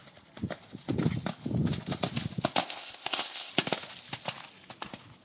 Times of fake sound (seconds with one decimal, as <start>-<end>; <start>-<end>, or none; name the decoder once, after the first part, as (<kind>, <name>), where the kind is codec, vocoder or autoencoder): 2.6-3.5 (codec, ZipCodec)